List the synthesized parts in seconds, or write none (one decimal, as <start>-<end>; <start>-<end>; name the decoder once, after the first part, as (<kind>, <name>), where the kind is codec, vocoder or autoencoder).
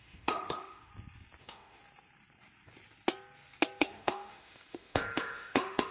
0.0-0.9 (autoencoder, DAC-VAE); 1.4-1.8; 3.8-5.9